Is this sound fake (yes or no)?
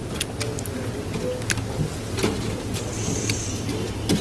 no